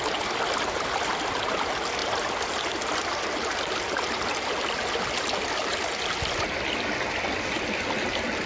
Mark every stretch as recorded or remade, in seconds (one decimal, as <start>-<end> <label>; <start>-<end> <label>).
0.0-8.5 recorded